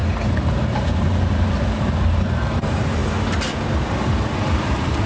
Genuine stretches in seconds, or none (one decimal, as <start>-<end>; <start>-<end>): 0.0-0.6; 3.0-4.0